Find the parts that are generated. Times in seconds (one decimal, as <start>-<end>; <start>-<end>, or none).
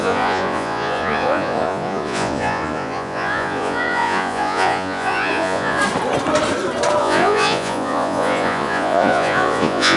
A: 0.0-5.8; 7.0-10.0